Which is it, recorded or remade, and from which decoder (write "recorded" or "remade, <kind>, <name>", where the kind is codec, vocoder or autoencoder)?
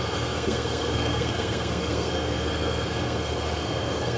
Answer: remade, codec, SNAC